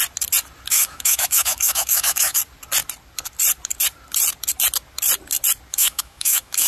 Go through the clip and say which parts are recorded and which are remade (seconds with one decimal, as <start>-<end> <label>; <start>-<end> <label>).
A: 0.0-0.7 recorded; 0.7-2.4 remade; 2.4-5.7 recorded; 5.7-6.7 remade

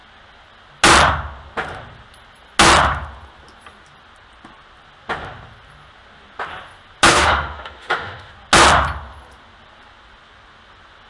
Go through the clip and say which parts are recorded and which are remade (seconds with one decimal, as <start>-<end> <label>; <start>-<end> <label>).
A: 0.0-7.1 recorded; 7.1-8.3 remade; 8.3-11.1 recorded

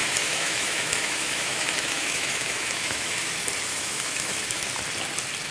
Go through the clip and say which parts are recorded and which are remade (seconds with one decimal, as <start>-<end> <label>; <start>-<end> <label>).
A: 0.0-3.3 remade; 3.3-3.7 recorded; 3.7-4.7 remade; 4.7-5.5 recorded

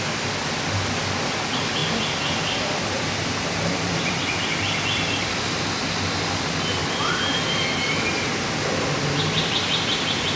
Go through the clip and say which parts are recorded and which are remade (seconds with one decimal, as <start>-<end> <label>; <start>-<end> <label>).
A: 0.0-10.4 recorded

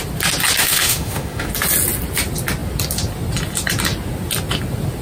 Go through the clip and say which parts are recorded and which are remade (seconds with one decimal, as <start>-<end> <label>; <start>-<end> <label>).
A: 0.0-0.6 recorded; 0.6-1.5 remade; 1.5-5.0 recorded

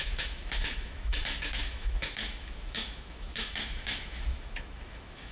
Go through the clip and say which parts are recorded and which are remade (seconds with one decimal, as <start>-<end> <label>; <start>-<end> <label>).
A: 0.0-5.3 remade

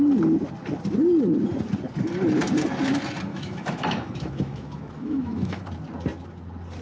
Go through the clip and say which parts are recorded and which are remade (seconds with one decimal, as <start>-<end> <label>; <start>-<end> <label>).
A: 0.0-3.3 recorded; 3.3-5.6 remade; 5.6-6.8 recorded

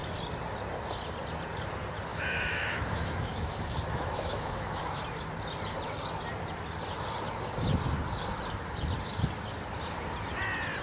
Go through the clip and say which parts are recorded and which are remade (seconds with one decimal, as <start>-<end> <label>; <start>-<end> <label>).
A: 0.0-2.1 recorded; 2.1-5.0 remade; 5.0-10.8 recorded